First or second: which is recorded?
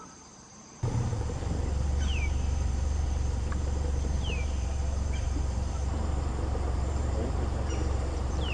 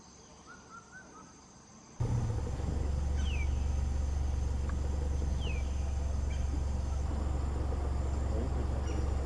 second